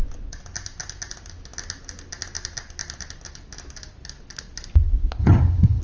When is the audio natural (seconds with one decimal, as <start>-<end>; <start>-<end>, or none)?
0.0-5.2